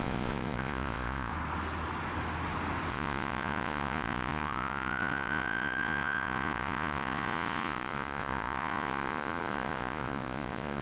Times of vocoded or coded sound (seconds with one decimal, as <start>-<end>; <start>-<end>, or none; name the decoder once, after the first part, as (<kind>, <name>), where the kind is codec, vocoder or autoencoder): 0.0-1.3 (vocoder, Vocos); 2.9-10.8